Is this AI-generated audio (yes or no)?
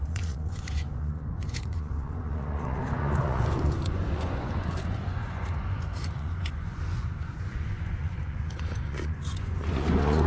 yes